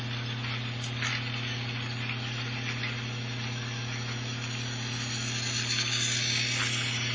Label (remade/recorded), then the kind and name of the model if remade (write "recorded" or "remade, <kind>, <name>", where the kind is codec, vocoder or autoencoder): recorded